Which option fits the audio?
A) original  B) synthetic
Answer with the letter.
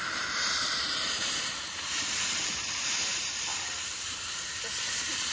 B